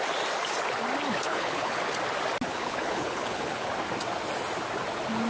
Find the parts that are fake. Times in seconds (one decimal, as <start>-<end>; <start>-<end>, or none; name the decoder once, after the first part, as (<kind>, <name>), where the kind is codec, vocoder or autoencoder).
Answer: 1.3-1.8 (codec, HILCodec); 2.5-3.7